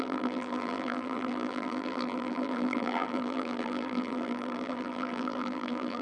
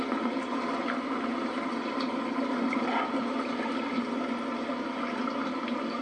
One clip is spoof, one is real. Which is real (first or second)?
second